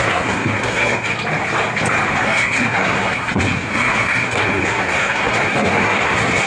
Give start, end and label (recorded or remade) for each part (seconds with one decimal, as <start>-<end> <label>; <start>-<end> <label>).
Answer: 0.0-1.1 remade; 1.1-2.2 recorded; 2.2-6.5 remade